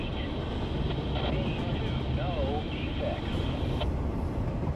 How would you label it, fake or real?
real